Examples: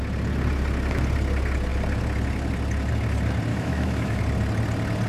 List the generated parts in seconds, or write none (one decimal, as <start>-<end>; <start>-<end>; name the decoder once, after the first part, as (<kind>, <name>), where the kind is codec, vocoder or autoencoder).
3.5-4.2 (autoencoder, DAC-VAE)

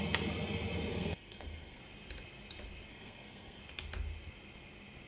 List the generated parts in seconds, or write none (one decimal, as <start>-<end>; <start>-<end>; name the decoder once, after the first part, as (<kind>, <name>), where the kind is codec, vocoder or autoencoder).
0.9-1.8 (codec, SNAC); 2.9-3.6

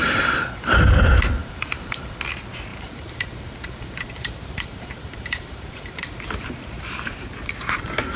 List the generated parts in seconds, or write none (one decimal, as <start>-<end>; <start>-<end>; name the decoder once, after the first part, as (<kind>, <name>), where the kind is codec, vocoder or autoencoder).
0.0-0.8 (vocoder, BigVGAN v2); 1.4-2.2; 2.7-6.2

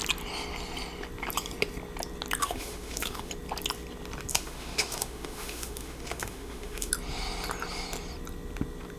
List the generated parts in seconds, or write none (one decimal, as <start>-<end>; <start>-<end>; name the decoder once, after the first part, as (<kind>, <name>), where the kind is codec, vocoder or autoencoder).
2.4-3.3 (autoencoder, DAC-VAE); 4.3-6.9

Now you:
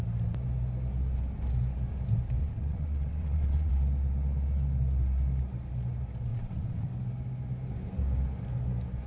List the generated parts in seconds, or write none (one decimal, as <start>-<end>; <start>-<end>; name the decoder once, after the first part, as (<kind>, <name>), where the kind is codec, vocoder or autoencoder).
2.4-3.7 (vocoder, WaveNeXt); 6.3-6.9